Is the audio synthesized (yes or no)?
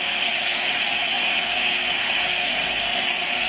yes